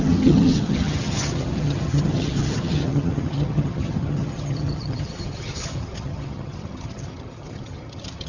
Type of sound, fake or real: fake